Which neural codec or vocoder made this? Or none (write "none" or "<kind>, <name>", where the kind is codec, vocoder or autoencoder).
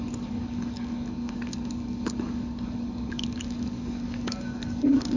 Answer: codec, DAC